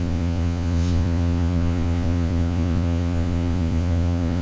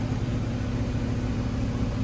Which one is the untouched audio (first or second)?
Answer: second